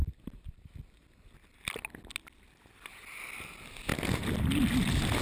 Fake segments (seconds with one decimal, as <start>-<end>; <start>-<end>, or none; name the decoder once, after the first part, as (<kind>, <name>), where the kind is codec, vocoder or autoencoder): none